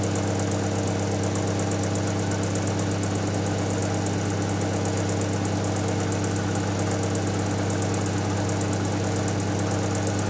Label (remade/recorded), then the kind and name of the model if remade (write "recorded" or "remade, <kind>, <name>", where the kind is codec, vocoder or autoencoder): recorded